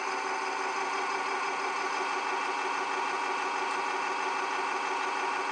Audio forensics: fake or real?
real